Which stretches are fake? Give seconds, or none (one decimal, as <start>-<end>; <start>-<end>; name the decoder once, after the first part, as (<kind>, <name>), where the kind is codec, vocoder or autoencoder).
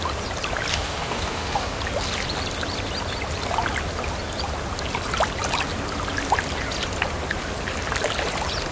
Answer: 0.7-1.8 (codec, DAC)